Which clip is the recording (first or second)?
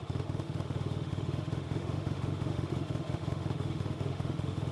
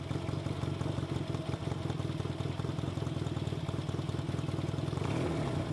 second